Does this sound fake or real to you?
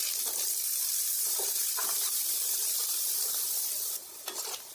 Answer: real